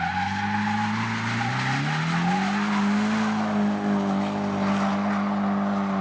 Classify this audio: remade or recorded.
recorded